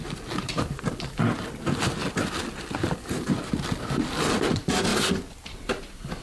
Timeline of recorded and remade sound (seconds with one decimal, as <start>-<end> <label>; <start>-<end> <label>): 0.0-6.2 recorded